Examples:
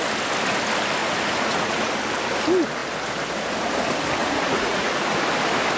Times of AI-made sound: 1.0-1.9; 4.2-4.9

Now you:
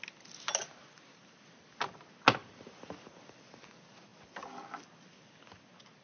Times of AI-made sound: 2.4-3.0

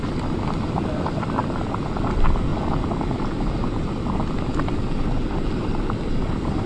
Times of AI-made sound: none